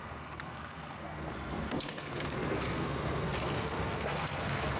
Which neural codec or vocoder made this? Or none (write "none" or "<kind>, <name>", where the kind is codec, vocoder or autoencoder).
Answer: codec, SNAC